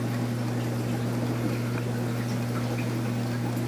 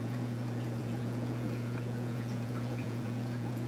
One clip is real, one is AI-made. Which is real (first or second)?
first